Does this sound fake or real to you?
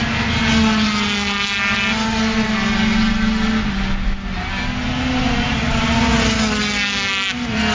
real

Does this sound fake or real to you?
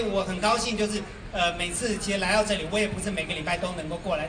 real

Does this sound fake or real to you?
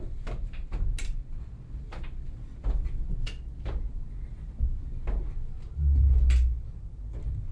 real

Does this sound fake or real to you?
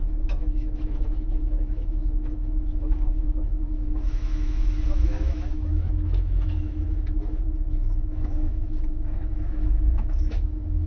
fake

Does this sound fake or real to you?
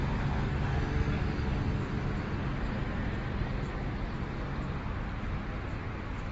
real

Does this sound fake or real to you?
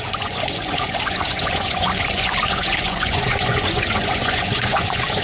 fake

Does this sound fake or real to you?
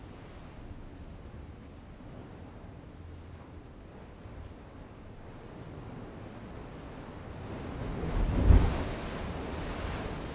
real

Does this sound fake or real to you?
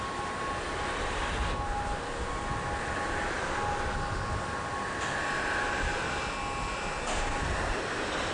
real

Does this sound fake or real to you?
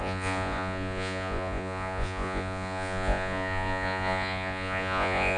fake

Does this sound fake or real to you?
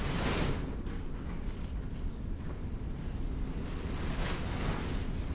real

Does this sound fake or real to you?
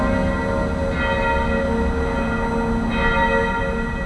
real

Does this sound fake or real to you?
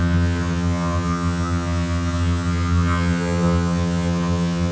fake